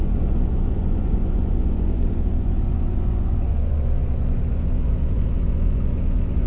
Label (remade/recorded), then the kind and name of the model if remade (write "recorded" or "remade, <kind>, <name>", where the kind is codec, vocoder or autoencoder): remade, vocoder, Vocos